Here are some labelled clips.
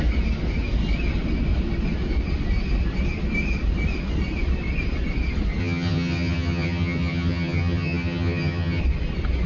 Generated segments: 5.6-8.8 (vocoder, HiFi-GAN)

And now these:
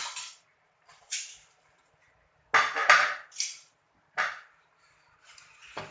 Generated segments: 0.0-2.4 (vocoder, BigVGAN v2); 2.8-5.0

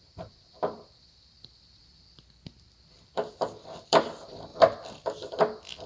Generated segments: 0.0-4.5 (vocoder, BigVGAN v2)